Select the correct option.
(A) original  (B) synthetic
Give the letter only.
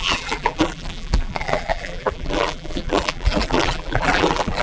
B